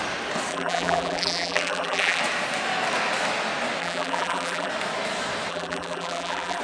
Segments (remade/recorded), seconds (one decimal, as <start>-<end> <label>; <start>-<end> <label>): 0.0-0.5 recorded; 0.5-2.2 remade; 2.2-3.8 recorded; 3.8-4.7 remade; 4.7-5.5 recorded; 5.5-6.6 remade